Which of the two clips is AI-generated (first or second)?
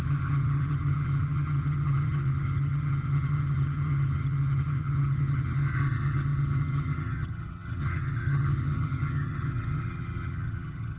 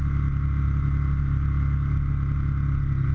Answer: first